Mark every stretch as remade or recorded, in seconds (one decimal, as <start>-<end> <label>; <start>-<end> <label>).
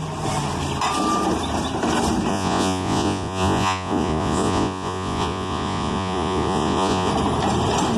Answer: 0.0-2.3 recorded; 2.3-7.1 remade; 7.1-8.0 recorded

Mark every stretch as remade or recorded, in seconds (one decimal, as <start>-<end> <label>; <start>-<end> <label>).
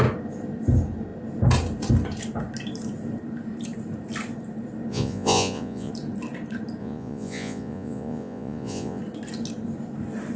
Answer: 0.0-4.9 recorded; 4.9-5.9 remade; 5.9-6.8 recorded; 6.8-9.0 remade; 9.0-10.4 recorded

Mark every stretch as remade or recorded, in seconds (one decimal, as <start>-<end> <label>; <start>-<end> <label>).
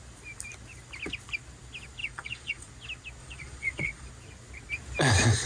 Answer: 0.0-2.0 recorded; 2.0-2.7 remade; 2.7-3.2 recorded; 3.2-4.1 remade; 4.1-5.5 recorded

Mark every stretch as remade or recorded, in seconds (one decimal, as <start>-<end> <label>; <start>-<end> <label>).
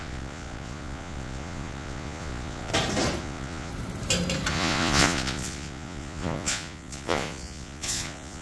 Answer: 0.0-2.7 remade; 2.7-3.2 recorded; 3.2-3.7 remade; 3.7-4.5 recorded; 4.5-8.4 remade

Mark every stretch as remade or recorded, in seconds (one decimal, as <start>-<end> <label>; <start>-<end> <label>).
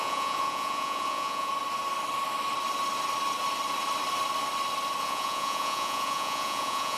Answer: 0.0-1.5 remade; 1.5-5.0 recorded; 5.0-7.0 remade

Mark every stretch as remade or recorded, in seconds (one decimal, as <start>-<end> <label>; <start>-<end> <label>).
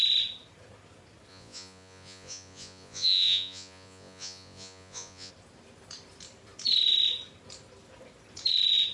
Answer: 0.0-1.3 recorded; 1.3-5.3 remade; 5.3-8.9 recorded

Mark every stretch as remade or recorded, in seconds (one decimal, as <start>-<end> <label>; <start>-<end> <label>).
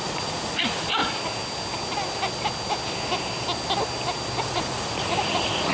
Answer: 0.0-1.0 remade; 1.0-4.4 recorded; 4.4-5.7 remade